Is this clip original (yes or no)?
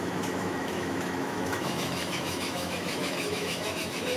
no